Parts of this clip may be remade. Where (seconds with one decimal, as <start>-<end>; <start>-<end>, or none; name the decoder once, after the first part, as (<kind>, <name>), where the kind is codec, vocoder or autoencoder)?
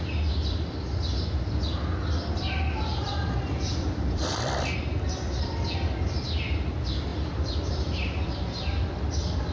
2.9-4.8 (vocoder, BigVGAN v2); 7.1-8.7